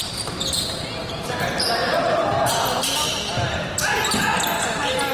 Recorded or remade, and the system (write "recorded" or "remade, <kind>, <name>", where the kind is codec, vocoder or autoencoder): recorded